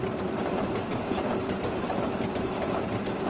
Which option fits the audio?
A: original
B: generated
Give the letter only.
B